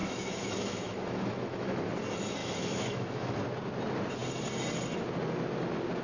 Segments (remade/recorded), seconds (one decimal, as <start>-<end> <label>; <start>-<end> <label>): 0.0-1.8 remade; 1.8-2.4 recorded; 2.4-3.4 remade; 3.4-6.0 recorded